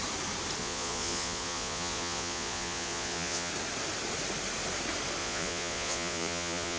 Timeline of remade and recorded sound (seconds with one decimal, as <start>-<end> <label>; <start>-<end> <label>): 0.0-0.6 recorded; 0.6-3.5 remade; 3.5-5.2 recorded; 5.2-6.8 remade